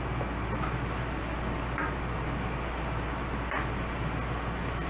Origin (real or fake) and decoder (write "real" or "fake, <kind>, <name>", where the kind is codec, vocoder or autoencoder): real